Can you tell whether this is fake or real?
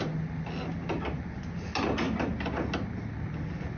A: real